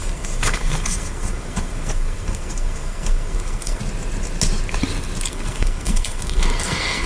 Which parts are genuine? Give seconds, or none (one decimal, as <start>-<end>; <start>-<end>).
3.8-5.3